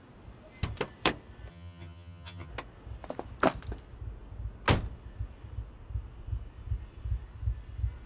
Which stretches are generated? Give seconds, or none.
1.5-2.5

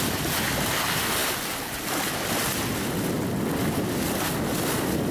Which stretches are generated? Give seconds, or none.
1.2-2.0